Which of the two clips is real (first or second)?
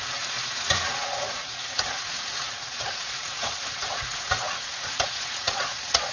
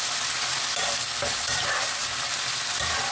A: second